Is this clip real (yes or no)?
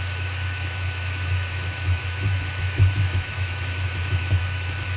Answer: no